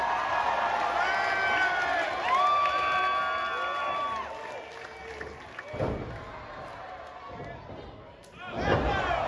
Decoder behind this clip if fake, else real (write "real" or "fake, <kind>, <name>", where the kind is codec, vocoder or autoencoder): real